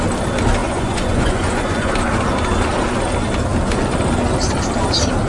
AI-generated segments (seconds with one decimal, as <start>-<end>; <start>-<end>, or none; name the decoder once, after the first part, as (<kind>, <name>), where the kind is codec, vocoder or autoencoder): 0.6-1.9 (vocoder, Vocos)